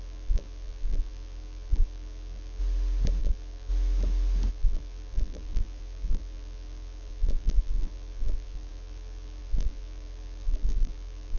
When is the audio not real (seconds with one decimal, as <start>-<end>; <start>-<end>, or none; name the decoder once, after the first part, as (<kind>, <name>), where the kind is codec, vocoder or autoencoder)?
0.0-2.6 (vocoder, BigVGAN v2); 3.2-3.7; 4.5-11.4